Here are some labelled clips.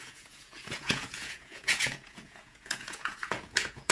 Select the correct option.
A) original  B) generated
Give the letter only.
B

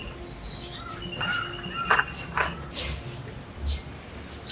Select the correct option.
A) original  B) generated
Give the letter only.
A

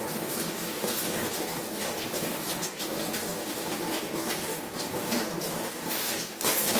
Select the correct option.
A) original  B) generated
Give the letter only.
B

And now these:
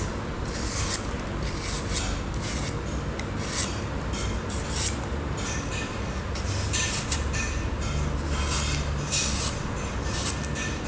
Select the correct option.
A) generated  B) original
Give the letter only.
B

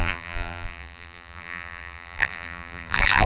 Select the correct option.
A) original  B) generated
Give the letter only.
B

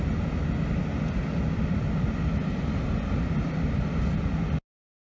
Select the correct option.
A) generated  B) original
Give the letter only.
B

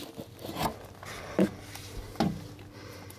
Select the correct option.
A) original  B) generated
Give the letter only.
A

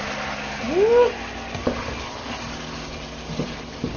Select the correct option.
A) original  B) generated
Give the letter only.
A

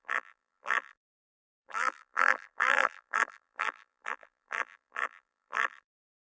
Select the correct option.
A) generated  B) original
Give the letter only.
A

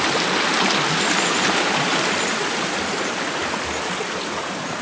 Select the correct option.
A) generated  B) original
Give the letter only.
B